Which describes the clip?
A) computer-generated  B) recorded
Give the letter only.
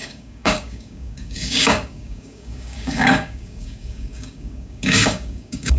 A